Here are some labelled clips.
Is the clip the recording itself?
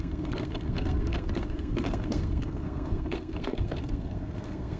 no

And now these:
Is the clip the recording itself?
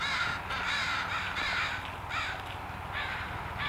yes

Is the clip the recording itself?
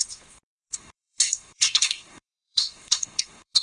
no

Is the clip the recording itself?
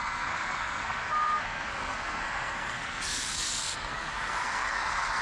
no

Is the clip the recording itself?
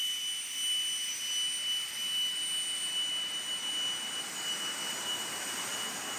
yes